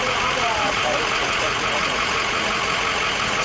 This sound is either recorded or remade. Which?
remade